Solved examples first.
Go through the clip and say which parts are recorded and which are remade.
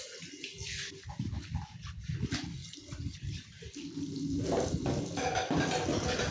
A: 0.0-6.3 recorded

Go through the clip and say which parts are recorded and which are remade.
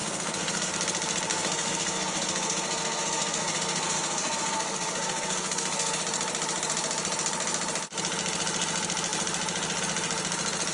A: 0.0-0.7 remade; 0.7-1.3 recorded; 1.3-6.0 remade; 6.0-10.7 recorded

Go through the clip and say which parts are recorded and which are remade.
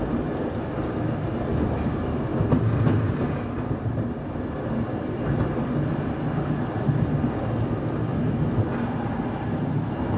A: 0.0-10.2 recorded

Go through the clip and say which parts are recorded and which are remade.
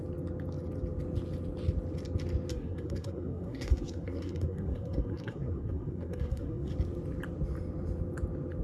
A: 0.0-2.5 recorded; 2.5-6.7 remade; 6.7-8.6 recorded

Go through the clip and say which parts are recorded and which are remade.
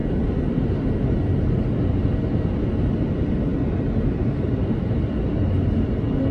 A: 0.0-6.3 recorded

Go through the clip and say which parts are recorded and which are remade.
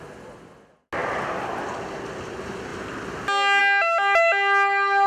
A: 0.0-5.1 recorded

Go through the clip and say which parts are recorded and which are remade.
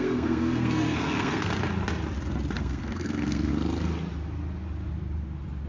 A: 0.0-1.5 remade; 1.5-2.5 recorded; 2.5-3.5 remade; 3.5-5.7 recorded